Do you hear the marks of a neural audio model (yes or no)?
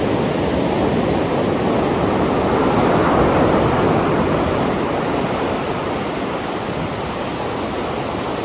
no